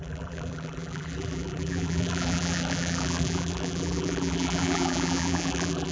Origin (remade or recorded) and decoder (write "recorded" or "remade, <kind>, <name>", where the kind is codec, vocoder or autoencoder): remade, vocoder, BigVGAN v2